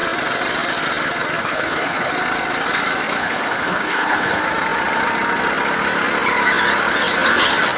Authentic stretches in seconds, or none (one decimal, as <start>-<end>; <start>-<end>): 0.0-1.4; 2.1-3.2; 4.4-7.8